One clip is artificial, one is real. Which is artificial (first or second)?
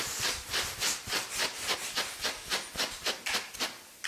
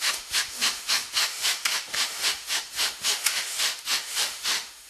second